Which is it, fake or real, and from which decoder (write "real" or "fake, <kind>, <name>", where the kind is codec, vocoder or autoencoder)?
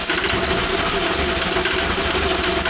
real